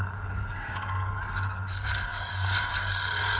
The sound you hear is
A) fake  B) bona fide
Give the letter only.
A